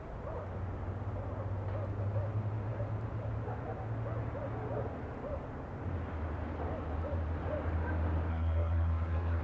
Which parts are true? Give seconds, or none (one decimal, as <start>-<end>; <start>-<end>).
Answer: 0.0-8.3